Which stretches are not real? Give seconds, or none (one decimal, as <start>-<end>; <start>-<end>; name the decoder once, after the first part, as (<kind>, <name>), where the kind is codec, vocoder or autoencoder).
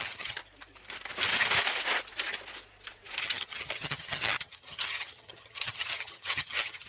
0.0-0.4 (vocoder, HiFi-GAN); 3.2-6.9